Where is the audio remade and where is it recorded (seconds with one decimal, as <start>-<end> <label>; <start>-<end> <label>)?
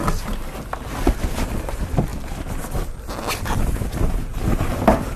0.0-5.2 recorded